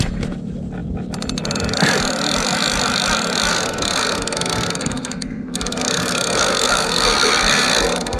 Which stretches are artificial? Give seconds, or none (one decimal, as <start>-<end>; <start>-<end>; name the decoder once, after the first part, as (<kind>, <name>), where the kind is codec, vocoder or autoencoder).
3.5-8.2 (codec, SNAC)